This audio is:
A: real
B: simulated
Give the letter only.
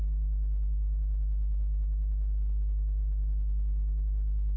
A